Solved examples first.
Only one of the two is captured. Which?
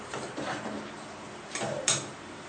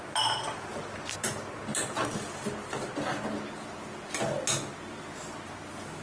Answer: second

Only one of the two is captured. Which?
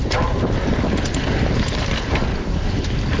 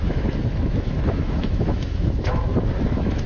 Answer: first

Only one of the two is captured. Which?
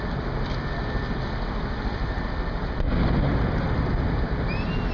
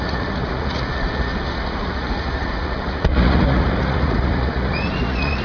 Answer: first